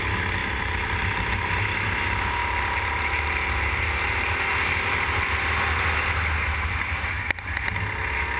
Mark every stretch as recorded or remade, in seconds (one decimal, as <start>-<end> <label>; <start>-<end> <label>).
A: 0.0-0.4 recorded; 0.4-1.5 remade; 1.5-2.4 recorded; 2.4-5.8 remade; 5.8-8.4 recorded